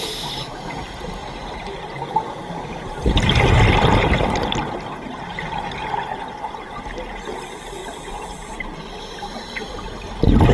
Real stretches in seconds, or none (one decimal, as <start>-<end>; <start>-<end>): 0.0-7.8; 9.0-10.5